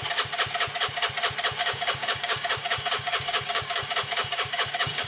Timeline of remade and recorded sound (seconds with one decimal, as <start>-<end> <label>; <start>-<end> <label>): 0.0-1.6 recorded; 1.6-5.1 remade